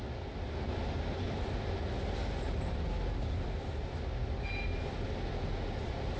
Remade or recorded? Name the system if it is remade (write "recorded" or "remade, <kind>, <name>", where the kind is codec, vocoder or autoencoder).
recorded